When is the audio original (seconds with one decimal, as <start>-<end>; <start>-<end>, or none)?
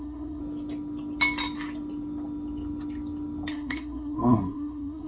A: 0.4-3.5